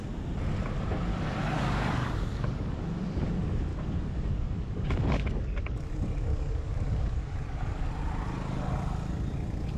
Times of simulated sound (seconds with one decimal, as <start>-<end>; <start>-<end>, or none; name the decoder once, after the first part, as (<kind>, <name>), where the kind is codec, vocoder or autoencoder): 1.1-2.9 (codec, DAC); 3.7-7.9